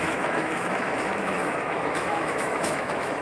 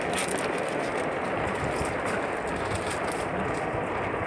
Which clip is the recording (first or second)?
second